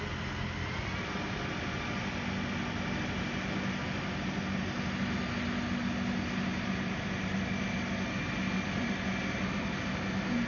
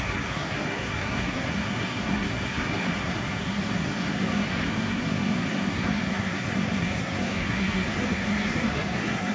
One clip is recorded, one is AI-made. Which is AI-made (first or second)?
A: second